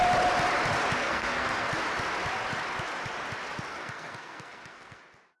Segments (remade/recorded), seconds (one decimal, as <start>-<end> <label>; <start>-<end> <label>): 0.0-1.0 recorded; 1.0-1.7 remade; 1.7-3.7 recorded; 3.7-5.0 remade; 5.0-5.4 recorded

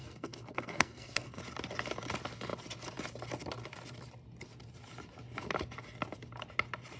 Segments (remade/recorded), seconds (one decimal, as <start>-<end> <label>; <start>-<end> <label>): 0.0-1.4 remade; 1.4-7.0 recorded

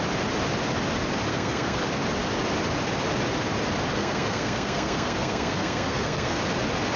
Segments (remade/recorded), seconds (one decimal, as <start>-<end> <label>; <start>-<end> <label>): 0.0-1.3 recorded; 1.3-1.8 remade; 1.8-3.9 recorded; 3.9-6.4 remade; 6.4-7.0 recorded

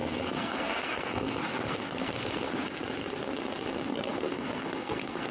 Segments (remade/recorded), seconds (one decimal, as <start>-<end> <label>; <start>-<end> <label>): 0.0-2.5 remade; 2.5-3.9 recorded; 3.9-5.3 remade

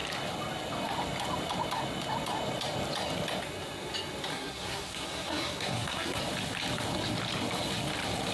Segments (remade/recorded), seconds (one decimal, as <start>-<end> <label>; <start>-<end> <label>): 0.0-4.3 recorded; 4.3-6.2 remade; 6.2-8.3 recorded

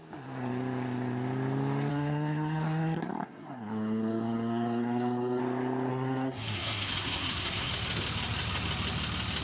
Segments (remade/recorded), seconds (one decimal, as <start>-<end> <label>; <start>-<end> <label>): 0.0-1.9 recorded; 1.9-5.4 remade; 5.4-5.9 recorded; 5.9-7.7 remade; 7.7-9.4 recorded

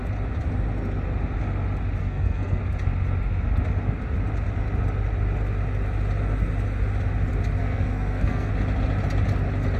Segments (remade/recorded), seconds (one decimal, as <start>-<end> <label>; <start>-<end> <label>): 0.0-2.0 recorded; 2.0-2.6 remade; 2.6-7.6 recorded; 7.6-8.5 remade; 8.5-9.8 recorded

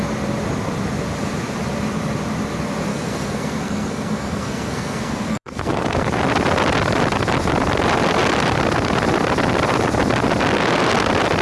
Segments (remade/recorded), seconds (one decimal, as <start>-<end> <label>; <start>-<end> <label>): 0.0-2.9 recorded; 2.9-6.2 remade; 6.2-11.4 recorded